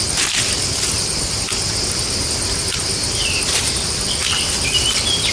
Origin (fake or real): real